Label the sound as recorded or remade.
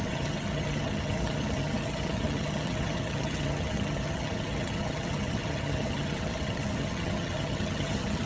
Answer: remade